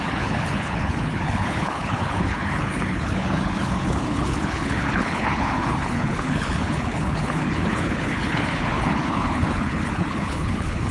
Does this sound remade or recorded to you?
remade